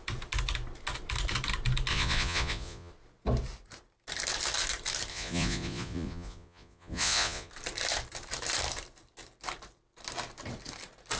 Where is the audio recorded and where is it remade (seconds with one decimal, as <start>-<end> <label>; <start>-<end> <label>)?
0.0-1.9 recorded; 1.9-2.9 remade; 2.9-5.1 recorded; 5.1-7.5 remade; 7.5-11.2 recorded